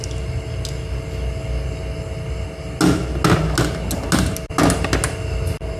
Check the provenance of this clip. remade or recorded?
recorded